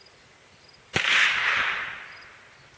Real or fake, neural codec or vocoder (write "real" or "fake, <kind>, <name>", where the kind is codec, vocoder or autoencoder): real